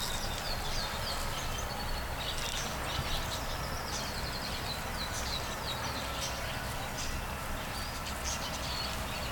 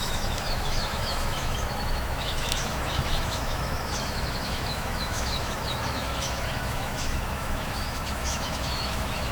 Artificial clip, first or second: second